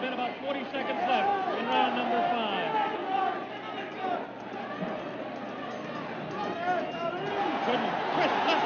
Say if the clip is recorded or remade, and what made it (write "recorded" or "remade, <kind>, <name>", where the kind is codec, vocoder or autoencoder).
recorded